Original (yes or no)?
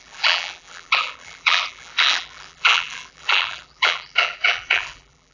no